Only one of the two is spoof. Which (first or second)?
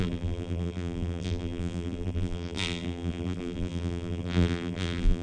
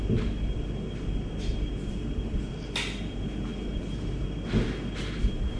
first